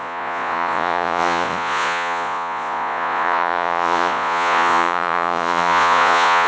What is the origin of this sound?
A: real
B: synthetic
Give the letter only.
B